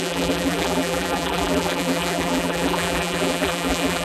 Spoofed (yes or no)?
yes